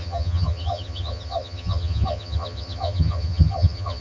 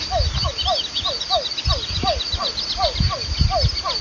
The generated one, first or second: first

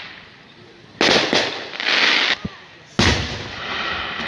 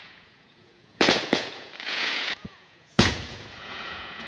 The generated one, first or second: second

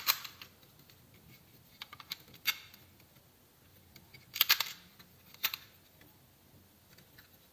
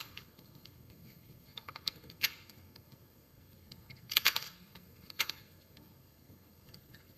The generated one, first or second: second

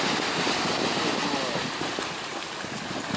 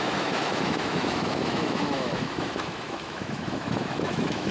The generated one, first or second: second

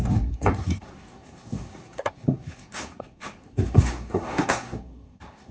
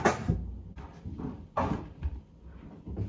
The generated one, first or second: first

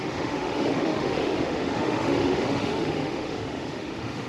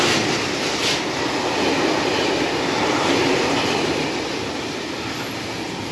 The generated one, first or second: first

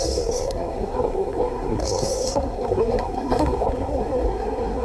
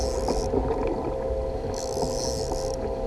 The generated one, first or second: first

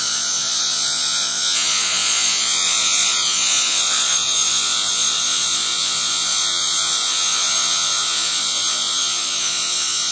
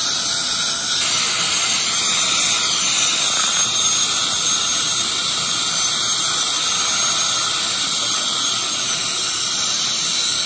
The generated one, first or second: first